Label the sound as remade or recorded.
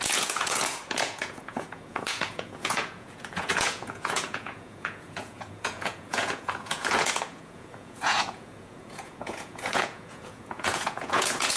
remade